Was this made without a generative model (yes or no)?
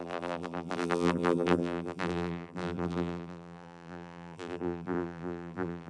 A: no